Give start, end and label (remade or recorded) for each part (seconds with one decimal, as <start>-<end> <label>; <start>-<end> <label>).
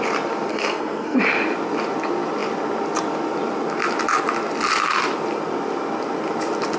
0.0-0.5 recorded; 0.5-1.2 remade; 1.2-6.8 recorded